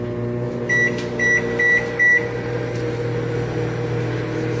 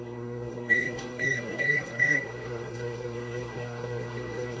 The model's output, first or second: second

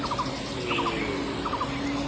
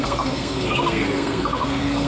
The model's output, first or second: second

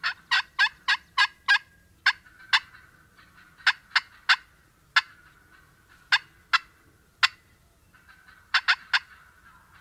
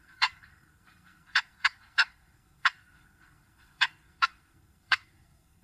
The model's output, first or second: second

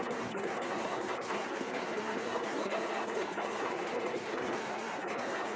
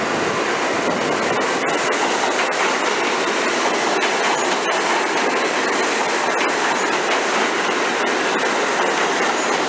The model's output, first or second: first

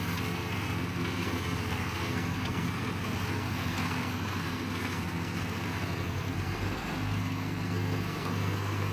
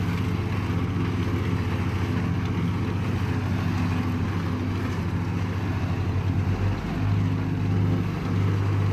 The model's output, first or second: first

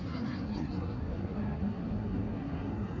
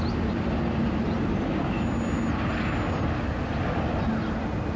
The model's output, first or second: first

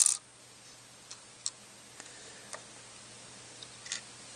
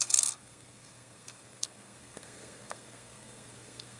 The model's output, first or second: second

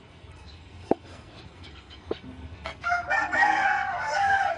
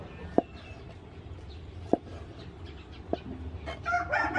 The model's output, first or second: first